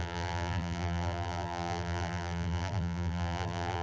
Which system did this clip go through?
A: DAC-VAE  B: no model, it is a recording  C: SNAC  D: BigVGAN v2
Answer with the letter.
D